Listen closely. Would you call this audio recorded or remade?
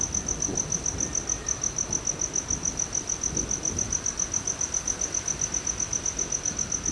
recorded